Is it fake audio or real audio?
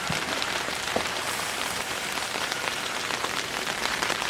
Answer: fake